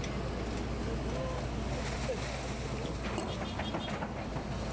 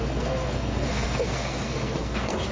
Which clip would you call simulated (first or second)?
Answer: second